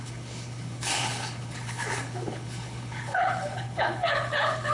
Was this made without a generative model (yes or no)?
no